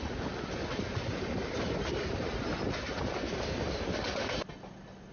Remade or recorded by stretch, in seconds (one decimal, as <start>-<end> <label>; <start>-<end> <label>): 0.0-5.1 recorded